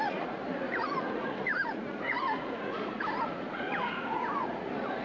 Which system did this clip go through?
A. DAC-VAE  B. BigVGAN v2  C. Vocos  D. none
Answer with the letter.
C